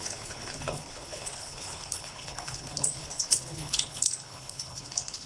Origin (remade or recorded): remade